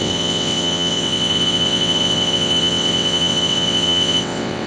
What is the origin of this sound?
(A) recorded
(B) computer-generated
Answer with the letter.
B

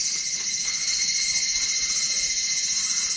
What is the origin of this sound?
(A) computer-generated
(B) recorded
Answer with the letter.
B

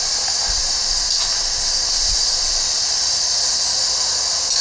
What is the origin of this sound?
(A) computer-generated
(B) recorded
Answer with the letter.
B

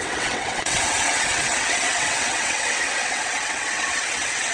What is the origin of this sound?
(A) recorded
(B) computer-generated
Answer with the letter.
B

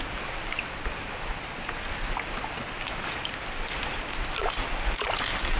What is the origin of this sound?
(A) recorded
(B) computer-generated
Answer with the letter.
A